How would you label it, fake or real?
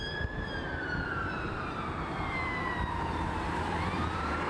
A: fake